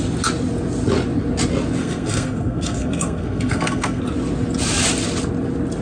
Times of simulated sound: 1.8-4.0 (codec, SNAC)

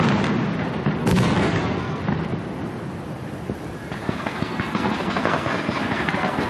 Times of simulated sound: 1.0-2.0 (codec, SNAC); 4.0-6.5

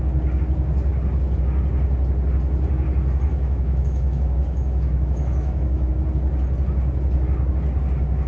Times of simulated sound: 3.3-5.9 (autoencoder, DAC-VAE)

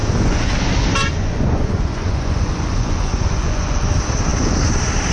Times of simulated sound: 0.0-0.5 (vocoder, Vocos); 1.0-3.9

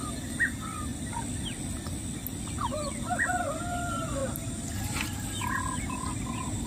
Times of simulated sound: 0.0-0.9 (vocoder, BigVGAN v2); 3.7-4.2

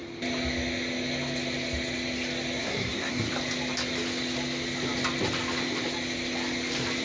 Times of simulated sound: 2.6-3.3 (codec, SNAC)

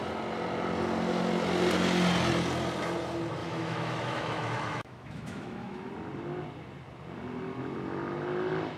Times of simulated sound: 3.4-5.9 (autoencoder, DAC-VAE)

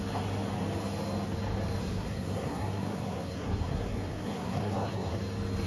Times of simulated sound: 1.8-5.2 (codec, SNAC)